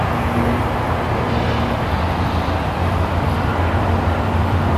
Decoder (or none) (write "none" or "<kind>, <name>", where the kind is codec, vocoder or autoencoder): vocoder, BigVGAN v2